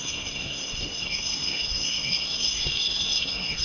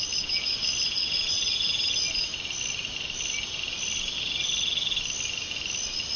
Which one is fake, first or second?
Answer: first